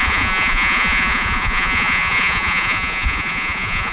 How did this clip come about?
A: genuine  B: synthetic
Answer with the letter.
B